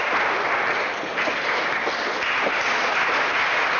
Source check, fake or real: real